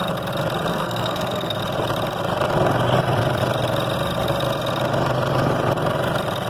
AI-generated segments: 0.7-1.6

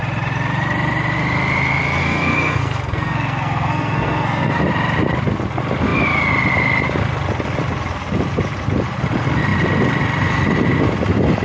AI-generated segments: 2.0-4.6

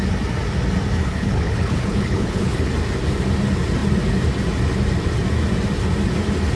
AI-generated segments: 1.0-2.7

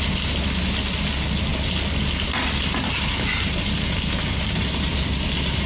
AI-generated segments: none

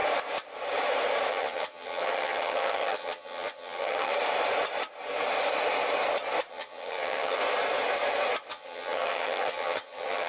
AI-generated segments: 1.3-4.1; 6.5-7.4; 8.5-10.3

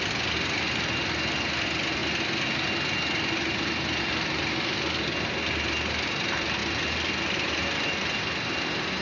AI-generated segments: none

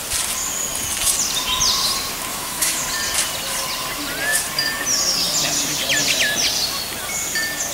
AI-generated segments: 2.3-2.8

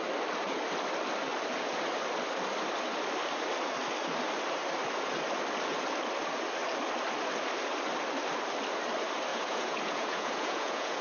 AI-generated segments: 9.3-11.0